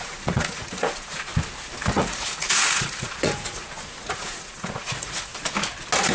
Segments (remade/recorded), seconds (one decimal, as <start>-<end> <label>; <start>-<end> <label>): 0.0-1.3 remade; 1.3-1.9 recorded; 1.9-5.3 remade; 5.3-6.1 recorded